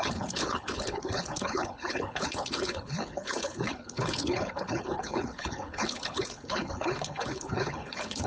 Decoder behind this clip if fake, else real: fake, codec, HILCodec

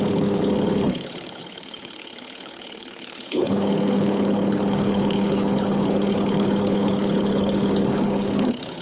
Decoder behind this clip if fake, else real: fake, codec, HILCodec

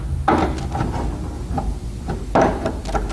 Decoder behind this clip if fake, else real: real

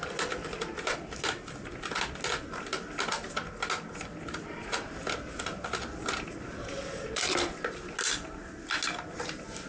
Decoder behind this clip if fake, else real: real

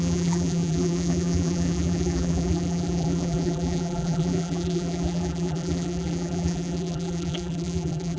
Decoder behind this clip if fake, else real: fake, vocoder, BigVGAN v2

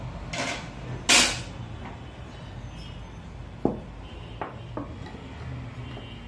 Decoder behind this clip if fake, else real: real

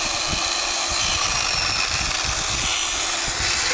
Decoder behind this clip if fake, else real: real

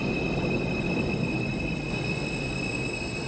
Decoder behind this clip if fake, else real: real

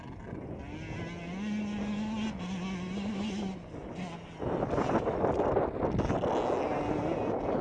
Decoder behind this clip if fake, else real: real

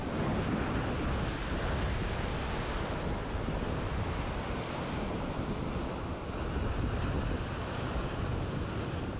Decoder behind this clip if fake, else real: real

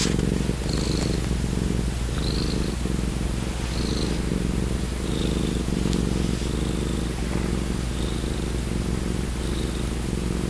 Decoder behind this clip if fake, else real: real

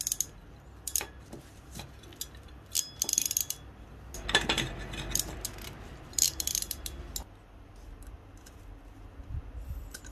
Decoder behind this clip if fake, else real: real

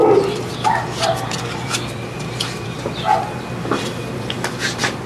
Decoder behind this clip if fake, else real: fake, vocoder, BigVGAN v2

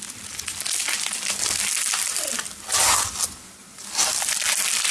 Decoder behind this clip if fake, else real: real